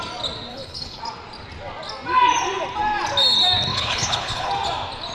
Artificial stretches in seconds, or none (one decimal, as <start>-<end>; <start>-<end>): 0.5-1.0; 3.7-4.5